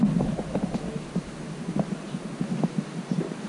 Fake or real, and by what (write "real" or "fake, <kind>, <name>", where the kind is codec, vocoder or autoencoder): real